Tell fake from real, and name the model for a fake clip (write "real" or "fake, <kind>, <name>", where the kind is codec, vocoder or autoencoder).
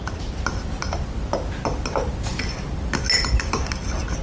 real